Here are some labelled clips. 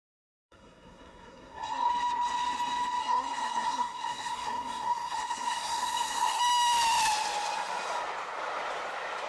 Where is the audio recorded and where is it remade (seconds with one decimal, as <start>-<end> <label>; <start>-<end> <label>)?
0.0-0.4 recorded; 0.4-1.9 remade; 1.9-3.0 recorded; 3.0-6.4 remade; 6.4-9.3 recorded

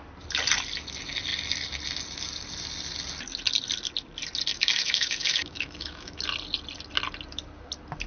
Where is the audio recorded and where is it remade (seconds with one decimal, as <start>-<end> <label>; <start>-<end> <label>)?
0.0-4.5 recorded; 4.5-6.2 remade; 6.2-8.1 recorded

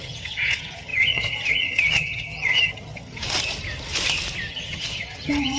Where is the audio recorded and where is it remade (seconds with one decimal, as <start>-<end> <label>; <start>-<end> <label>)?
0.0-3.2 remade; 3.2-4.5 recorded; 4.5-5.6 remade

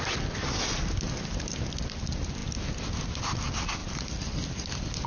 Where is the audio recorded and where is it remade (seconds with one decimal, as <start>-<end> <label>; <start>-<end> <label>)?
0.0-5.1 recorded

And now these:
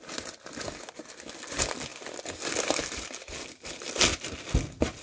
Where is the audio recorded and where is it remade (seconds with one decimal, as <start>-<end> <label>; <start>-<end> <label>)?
0.0-5.0 recorded

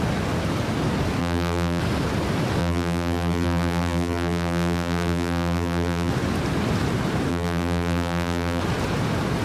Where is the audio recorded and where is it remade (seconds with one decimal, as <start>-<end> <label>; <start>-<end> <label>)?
0.0-1.2 recorded; 1.2-1.8 remade; 1.8-2.6 recorded; 2.6-6.1 remade; 6.1-7.3 recorded; 7.3-8.6 remade; 8.6-9.4 recorded